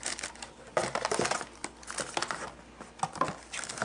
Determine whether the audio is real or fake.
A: real